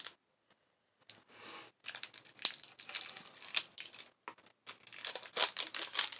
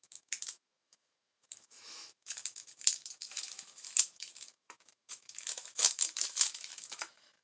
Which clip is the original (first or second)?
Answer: first